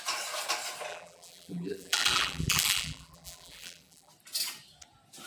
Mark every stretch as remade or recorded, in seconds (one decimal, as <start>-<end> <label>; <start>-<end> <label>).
0.0-0.9 recorded; 0.9-4.1 remade; 4.1-5.3 recorded

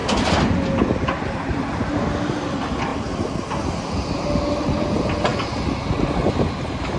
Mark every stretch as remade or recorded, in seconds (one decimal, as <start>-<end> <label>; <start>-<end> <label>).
0.0-2.9 remade; 2.9-4.6 recorded; 4.6-5.3 remade; 5.3-6.3 recorded; 6.3-7.0 remade

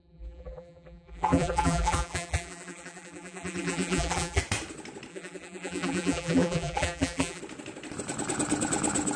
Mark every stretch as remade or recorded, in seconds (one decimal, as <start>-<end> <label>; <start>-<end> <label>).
0.0-4.4 remade; 4.4-5.1 recorded; 5.1-7.4 remade; 7.4-9.2 recorded

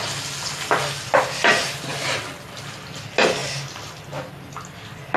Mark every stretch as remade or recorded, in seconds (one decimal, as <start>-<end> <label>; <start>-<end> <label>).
0.0-5.2 recorded

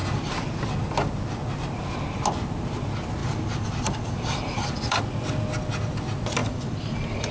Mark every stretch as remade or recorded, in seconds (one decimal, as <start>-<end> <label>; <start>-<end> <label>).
0.0-3.2 recorded; 3.2-5.0 remade; 5.0-6.4 recorded; 6.4-7.3 remade

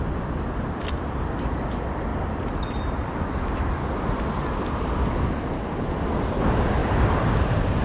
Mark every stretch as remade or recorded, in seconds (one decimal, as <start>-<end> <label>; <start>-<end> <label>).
0.0-2.1 recorded; 2.1-3.1 remade; 3.1-6.8 recorded; 6.8-7.8 remade

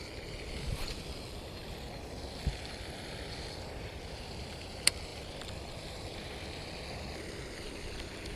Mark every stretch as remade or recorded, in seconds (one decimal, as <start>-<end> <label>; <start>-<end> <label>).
0.0-1.6 remade; 1.6-2.7 recorded; 2.7-8.4 remade

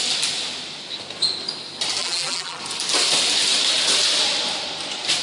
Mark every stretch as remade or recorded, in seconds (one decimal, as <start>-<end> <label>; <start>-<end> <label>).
0.0-2.0 recorded; 2.0-2.6 remade; 2.6-5.2 recorded